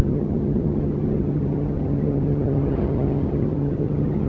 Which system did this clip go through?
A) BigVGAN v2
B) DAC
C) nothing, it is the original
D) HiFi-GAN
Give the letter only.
D